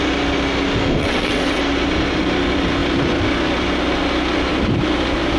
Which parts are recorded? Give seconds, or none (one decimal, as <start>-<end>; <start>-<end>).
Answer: 0.0-1.0; 1.6-5.4